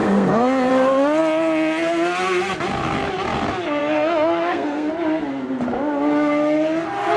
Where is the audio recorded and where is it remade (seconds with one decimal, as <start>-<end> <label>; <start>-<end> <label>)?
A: 0.0-0.7 remade; 0.7-3.8 recorded; 3.8-4.9 remade; 4.9-7.2 recorded